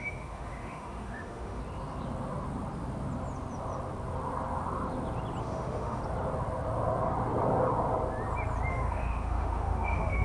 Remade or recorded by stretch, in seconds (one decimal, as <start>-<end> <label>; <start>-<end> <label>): 0.0-1.6 remade; 1.6-5.4 recorded; 5.4-6.0 remade; 6.0-8.7 recorded; 8.7-10.2 remade